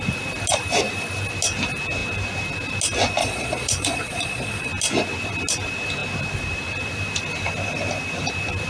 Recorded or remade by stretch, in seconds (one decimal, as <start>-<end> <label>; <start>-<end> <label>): 0.0-3.2 recorded; 3.2-4.7 remade; 4.7-8.7 recorded